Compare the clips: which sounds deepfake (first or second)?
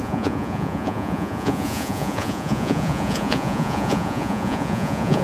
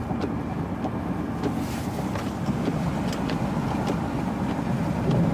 first